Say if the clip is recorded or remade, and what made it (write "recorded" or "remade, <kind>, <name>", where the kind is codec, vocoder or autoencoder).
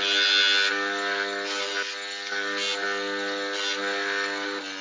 recorded